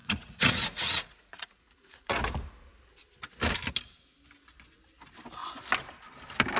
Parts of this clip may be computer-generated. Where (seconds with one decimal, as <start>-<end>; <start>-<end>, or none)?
0.0-2.2